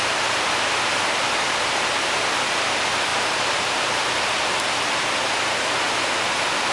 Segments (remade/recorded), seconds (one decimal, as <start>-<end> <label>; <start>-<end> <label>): 0.0-6.7 recorded